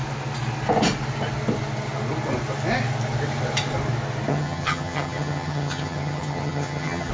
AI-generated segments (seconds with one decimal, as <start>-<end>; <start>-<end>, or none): 4.3-7.1